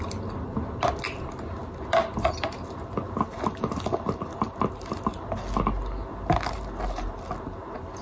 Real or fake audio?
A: real